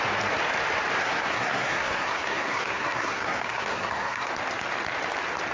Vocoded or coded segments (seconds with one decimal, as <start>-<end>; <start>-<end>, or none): 1.0-4.3